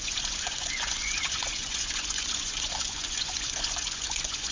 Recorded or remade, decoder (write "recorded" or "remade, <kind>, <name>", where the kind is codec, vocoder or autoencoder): remade, vocoder, Vocos